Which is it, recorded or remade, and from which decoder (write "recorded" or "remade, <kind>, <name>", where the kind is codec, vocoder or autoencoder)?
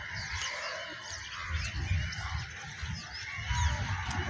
recorded